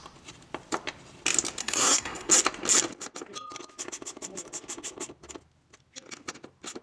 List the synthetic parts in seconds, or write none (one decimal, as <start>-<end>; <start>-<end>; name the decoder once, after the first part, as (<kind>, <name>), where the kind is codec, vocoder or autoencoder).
1.6-2.3 (codec, SNAC)